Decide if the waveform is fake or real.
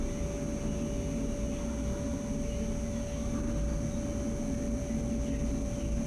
real